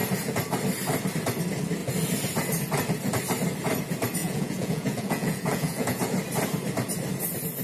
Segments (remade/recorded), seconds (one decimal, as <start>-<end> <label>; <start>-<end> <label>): 0.0-4.2 recorded; 4.2-6.0 remade; 6.0-7.6 recorded